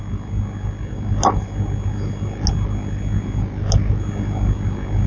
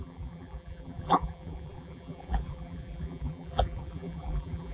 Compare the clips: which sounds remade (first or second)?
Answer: second